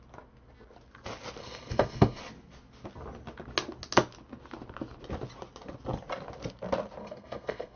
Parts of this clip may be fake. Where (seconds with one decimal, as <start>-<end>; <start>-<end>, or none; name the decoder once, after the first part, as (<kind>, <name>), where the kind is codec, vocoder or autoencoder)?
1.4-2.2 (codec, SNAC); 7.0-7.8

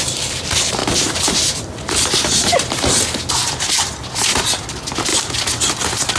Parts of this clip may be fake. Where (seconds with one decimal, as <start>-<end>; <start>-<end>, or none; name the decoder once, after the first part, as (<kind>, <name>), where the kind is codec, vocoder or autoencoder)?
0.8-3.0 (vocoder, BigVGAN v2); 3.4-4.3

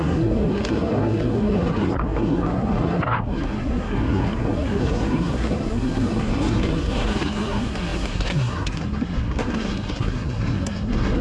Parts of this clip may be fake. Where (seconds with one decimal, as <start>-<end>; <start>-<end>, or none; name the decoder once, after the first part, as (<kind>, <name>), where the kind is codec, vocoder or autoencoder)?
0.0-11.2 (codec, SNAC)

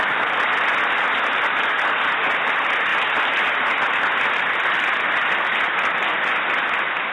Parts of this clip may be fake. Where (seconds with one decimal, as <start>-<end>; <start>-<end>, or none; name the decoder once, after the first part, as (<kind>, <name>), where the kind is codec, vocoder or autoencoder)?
none

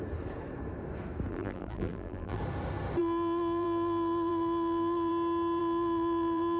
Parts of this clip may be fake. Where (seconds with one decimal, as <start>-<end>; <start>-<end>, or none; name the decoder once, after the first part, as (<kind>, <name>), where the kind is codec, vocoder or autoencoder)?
1.3-2.4 (vocoder, BigVGAN v2); 3.0-5.1; 5.6-6.6